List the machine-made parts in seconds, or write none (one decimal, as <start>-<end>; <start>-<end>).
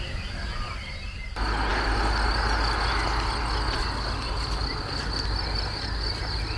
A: none